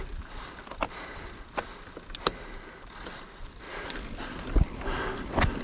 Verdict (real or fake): real